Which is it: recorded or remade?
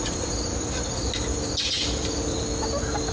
recorded